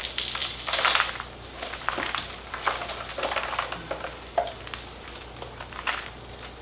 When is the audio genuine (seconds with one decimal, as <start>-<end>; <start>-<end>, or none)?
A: 0.0-6.6